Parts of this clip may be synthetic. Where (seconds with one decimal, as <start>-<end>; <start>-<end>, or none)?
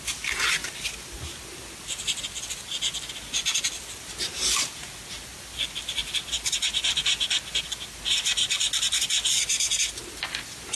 none